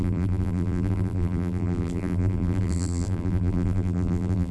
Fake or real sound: fake